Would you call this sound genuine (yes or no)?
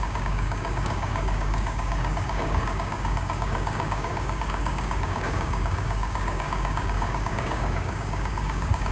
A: no